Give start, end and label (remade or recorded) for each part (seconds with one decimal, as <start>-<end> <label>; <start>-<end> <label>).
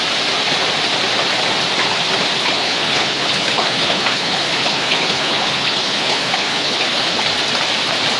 0.0-2.4 recorded; 2.4-7.2 remade; 7.2-8.2 recorded